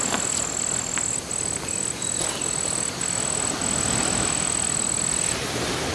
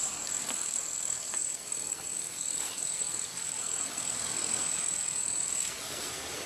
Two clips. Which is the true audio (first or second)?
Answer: first